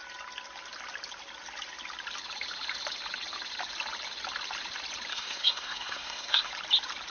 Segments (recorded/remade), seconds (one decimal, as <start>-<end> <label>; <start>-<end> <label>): 0.0-5.1 recorded; 5.1-6.5 remade; 6.5-7.1 recorded